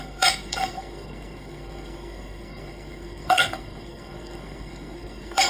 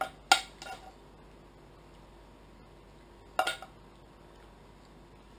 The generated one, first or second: first